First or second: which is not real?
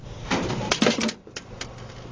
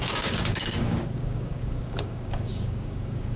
second